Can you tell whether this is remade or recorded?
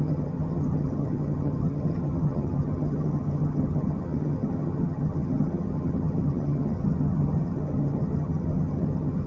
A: remade